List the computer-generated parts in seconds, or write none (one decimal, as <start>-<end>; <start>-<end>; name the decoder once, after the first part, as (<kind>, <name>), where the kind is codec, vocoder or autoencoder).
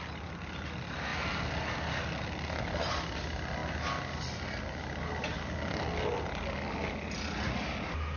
none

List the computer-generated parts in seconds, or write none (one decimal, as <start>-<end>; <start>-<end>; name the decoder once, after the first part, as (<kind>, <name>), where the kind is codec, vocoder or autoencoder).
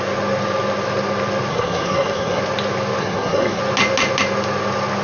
1.5-2.4 (codec, SNAC); 3.0-3.6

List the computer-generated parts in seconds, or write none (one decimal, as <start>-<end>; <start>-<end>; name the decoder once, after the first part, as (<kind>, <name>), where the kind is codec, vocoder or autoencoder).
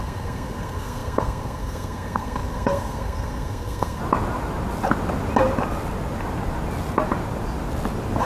0.0-4.0 (codec, SNAC)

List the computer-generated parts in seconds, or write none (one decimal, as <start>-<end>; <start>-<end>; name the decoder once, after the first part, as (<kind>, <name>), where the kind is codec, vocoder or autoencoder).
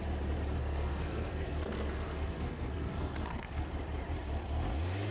0.6-3.7 (codec, SNAC)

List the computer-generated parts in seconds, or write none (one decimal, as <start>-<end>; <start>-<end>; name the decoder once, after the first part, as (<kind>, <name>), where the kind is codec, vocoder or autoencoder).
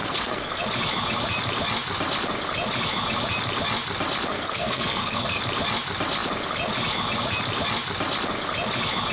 0.0-0.6 (codec, SNAC); 4.3-5.4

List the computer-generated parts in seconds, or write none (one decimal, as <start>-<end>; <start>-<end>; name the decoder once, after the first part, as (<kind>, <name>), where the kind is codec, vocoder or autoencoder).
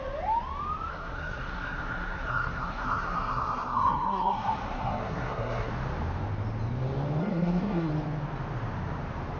0.9-5.7 (codec, SNAC); 7.2-7.9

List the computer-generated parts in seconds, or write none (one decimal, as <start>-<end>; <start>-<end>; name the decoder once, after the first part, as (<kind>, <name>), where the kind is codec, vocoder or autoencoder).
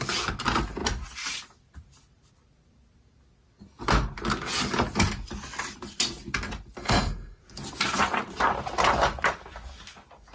6.8-7.4 (codec, SNAC)